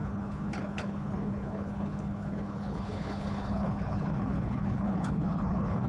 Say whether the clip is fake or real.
fake